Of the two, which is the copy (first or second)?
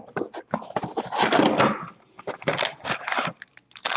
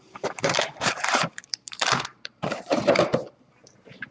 second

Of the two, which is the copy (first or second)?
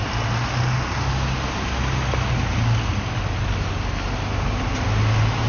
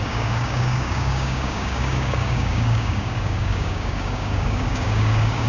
second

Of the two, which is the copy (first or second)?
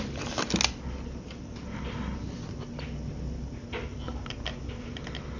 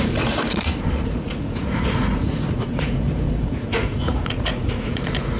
second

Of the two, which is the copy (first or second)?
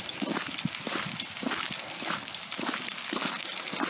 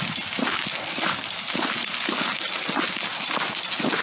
first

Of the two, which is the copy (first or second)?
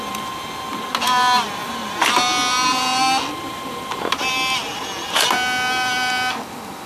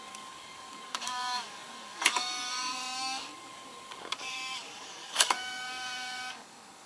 second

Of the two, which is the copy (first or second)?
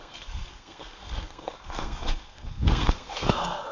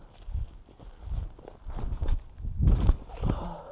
first